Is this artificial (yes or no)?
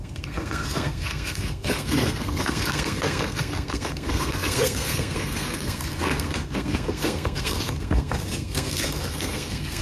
yes